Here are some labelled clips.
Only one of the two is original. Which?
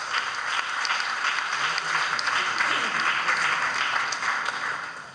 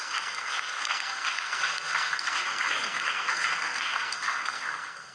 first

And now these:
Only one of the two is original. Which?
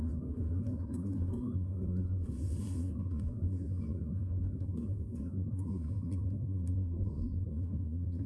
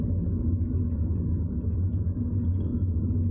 second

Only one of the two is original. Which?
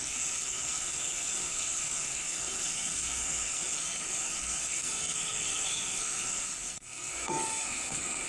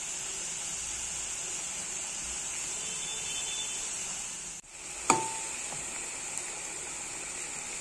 second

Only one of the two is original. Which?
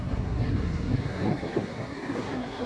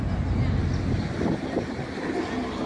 second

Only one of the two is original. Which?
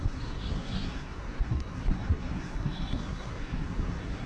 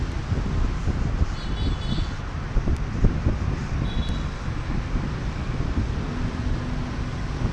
second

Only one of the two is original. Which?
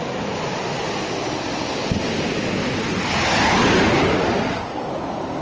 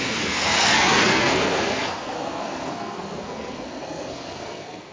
first